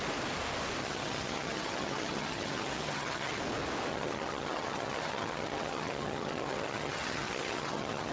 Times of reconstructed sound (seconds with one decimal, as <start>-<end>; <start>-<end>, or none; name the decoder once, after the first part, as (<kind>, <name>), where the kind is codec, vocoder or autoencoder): 0.8-3.4 (vocoder, HiFi-GAN); 3.9-8.1